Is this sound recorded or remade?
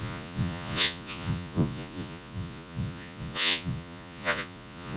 remade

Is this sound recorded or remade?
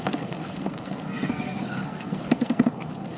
remade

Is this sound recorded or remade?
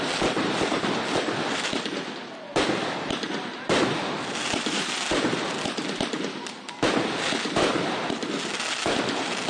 remade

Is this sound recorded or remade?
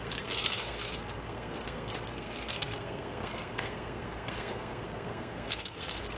remade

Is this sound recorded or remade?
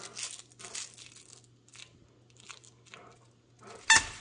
recorded